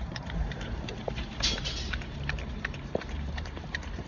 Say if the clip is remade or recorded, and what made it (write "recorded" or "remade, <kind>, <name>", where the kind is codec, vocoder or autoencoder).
remade, vocoder, BigVGAN v2